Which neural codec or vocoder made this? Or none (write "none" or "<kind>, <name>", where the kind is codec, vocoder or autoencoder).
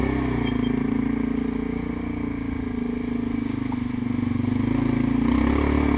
none